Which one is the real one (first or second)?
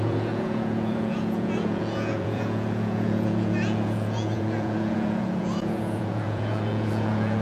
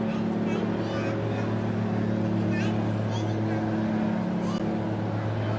second